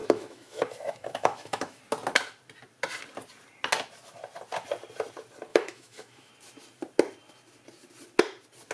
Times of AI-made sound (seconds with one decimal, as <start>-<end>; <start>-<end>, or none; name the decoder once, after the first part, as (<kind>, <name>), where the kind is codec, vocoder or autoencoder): 0.0-1.8 (autoencoder, DAC-VAE); 5.5-6.3